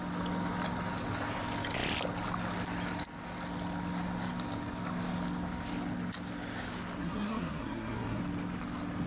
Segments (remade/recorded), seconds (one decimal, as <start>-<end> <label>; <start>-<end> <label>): 0.0-7.0 recorded; 7.0-8.2 remade; 8.2-9.1 recorded